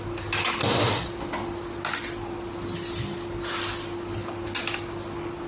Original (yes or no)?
yes